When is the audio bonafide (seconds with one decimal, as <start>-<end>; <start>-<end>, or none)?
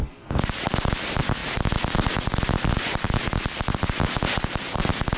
0.0-5.2